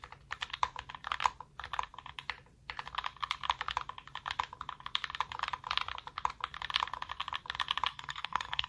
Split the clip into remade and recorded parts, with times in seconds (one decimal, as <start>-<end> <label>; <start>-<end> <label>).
0.0-7.9 recorded; 7.9-8.7 remade